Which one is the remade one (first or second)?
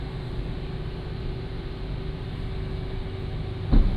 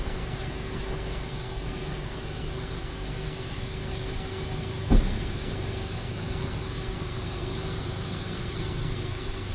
second